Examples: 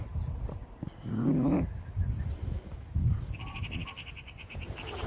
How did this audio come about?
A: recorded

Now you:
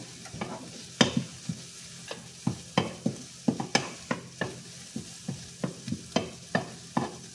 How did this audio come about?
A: recorded